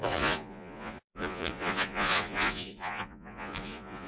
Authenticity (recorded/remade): remade